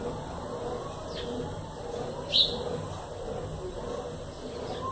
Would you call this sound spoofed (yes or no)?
no